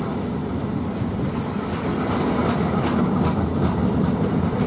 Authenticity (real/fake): real